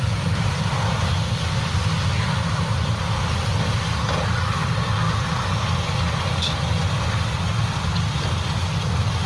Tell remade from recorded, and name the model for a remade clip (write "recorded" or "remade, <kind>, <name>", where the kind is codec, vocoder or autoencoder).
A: recorded